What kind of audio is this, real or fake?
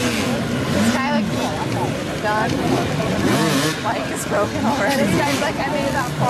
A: real